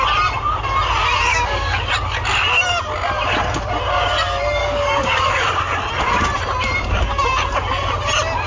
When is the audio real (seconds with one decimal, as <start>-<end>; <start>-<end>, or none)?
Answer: 0.0-1.3; 1.9-4.6; 5.3-8.5